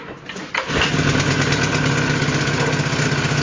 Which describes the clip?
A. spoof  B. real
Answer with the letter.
B